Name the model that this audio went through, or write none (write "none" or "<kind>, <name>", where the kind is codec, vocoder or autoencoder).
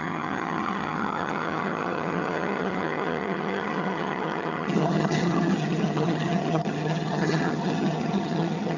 vocoder, HiFi-GAN